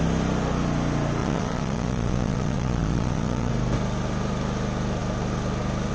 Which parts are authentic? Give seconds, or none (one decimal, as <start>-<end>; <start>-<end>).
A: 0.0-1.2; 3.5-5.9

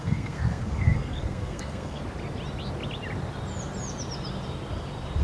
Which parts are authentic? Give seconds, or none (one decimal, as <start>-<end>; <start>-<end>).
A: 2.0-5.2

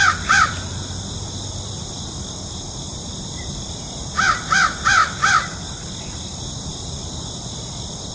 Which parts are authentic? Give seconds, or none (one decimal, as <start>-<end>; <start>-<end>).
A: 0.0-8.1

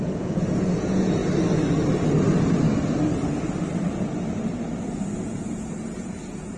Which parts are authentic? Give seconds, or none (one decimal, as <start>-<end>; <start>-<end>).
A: 1.2-5.2

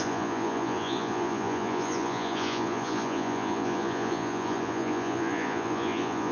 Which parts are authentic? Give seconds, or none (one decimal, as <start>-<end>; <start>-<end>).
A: none

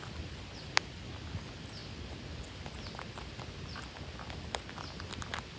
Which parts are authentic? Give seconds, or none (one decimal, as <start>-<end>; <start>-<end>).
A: 0.0-5.6